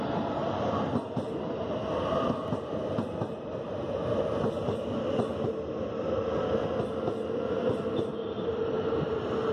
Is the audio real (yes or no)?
yes